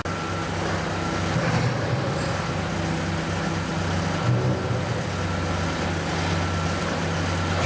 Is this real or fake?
real